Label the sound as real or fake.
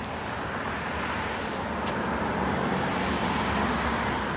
real